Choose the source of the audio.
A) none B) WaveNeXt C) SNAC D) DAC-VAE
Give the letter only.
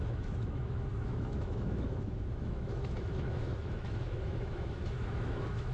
D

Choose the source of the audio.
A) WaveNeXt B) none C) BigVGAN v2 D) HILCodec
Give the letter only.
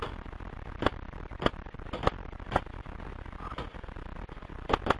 B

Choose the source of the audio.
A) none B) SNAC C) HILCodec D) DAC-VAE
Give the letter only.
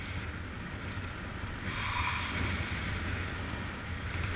A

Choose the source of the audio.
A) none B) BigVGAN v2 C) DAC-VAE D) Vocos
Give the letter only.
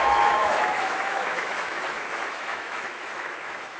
C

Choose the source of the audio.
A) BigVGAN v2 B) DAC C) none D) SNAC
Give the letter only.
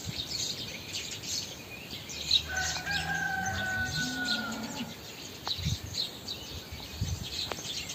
A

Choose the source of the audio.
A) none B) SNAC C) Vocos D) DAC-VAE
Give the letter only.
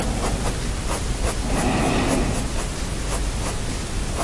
A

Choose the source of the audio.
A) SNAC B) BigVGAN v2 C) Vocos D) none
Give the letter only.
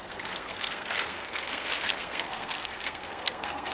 A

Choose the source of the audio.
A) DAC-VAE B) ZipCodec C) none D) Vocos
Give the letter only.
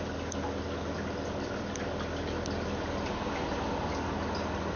C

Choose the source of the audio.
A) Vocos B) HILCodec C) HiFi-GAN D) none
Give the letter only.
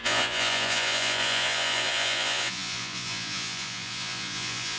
A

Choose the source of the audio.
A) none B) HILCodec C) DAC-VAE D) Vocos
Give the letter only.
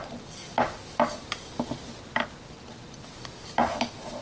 A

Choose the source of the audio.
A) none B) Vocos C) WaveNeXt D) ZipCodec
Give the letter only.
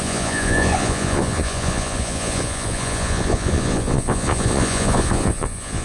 B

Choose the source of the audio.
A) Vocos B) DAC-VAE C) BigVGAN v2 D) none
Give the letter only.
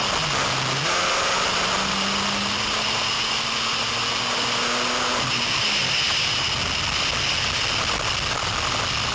D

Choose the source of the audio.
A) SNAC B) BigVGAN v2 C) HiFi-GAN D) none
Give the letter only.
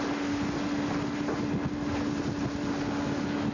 D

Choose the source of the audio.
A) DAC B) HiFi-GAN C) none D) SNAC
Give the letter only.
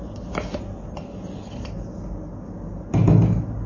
C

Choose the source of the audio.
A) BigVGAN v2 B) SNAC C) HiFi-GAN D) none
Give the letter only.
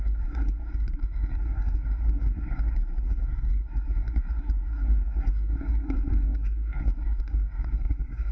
B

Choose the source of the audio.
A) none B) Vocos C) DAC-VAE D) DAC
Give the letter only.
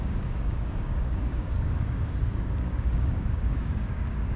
D